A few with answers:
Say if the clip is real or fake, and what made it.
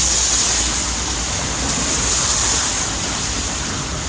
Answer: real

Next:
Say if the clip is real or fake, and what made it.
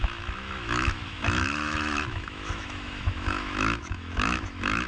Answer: fake, autoencoder, DAC-VAE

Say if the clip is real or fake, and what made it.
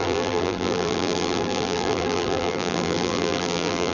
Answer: fake, vocoder, BigVGAN v2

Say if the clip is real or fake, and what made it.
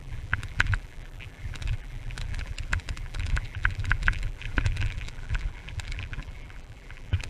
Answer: fake, vocoder, BigVGAN v2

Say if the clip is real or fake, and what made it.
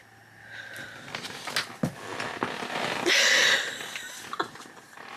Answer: real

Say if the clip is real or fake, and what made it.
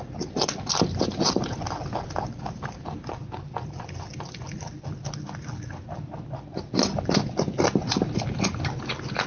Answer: real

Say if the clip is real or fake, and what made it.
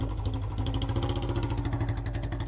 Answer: real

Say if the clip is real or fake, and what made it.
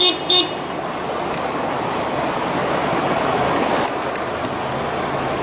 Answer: real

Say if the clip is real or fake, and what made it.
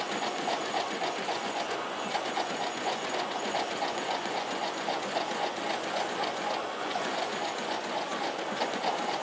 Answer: fake, vocoder, Vocos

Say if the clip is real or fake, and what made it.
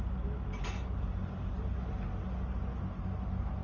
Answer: real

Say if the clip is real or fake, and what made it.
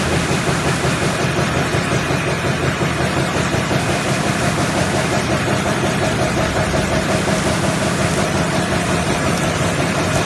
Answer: fake, vocoder, BigVGAN v2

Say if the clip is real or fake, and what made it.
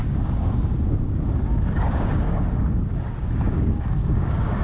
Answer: fake, codec, DAC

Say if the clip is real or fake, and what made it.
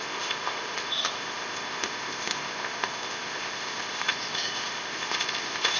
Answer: fake, codec, ZipCodec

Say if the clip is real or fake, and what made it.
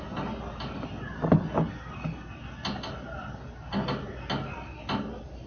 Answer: real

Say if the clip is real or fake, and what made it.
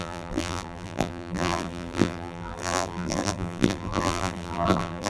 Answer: fake, vocoder, BigVGAN v2